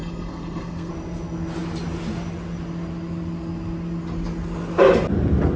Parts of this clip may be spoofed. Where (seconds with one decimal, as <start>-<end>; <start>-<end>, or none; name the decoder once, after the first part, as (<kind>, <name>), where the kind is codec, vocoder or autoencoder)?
0.0-0.9 (codec, SNAC)